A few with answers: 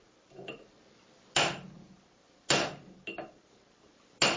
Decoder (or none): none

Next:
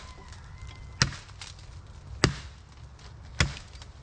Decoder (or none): none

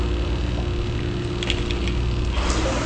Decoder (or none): none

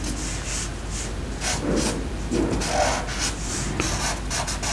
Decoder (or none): none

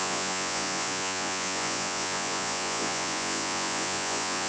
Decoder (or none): vocoder, Vocos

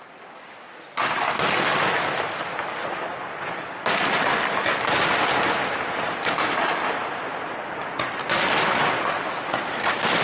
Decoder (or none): none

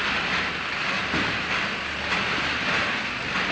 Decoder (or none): none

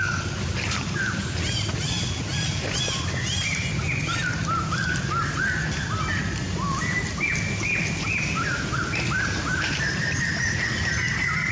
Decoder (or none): none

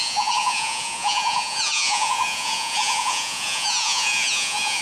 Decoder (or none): vocoder, Vocos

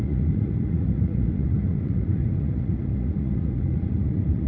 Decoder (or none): vocoder, Vocos